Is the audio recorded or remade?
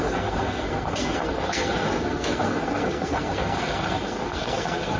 remade